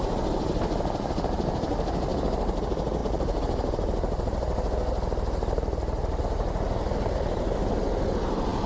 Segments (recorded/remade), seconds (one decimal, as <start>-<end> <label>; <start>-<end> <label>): 0.0-8.7 recorded